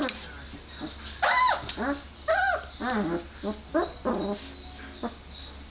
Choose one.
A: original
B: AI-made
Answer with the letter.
A